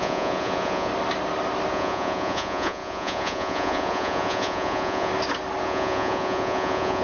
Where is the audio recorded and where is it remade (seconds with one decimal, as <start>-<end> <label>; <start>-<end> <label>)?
0.0-0.9 remade; 0.9-1.7 recorded; 1.7-5.1 remade; 5.1-5.6 recorded; 5.6-7.0 remade